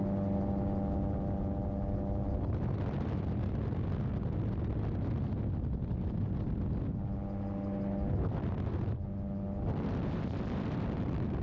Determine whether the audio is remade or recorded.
recorded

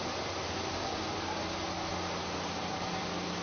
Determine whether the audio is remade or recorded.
recorded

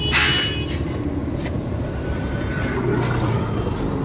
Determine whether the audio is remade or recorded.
recorded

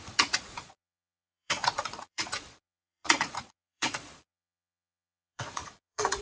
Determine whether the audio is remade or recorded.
remade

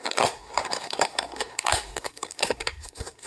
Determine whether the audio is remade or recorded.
remade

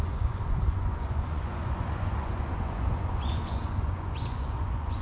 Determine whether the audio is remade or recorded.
remade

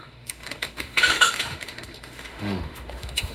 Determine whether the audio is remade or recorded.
remade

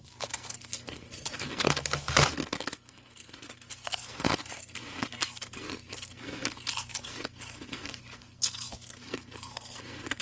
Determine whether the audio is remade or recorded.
remade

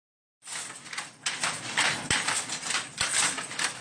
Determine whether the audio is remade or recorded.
recorded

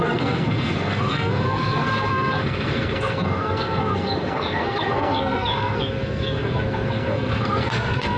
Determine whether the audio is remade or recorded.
remade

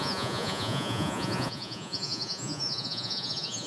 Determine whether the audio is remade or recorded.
remade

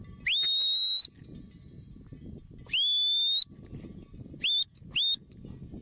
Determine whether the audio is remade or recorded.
recorded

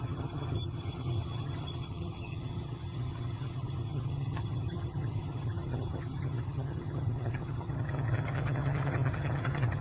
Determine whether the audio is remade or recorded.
remade